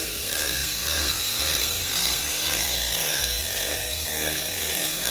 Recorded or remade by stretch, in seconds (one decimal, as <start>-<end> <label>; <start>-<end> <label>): 0.0-5.1 remade